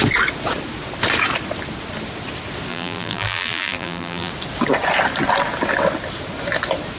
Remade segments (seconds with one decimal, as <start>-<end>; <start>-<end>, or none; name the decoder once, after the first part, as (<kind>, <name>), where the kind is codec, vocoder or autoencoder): 2.7-4.3 (vocoder, BigVGAN v2)

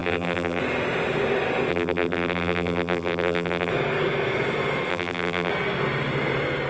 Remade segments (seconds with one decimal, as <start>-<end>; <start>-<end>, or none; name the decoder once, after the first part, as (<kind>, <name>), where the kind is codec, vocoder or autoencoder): 0.0-0.6 (vocoder, BigVGAN v2); 1.7-3.7; 4.9-5.5